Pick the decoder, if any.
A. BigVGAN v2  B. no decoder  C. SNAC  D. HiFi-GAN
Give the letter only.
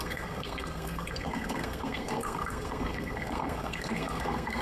C